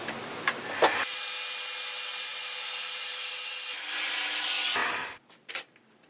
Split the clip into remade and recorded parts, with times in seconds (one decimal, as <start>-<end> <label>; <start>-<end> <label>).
0.0-4.8 recorded; 4.8-5.5 remade; 5.5-6.1 recorded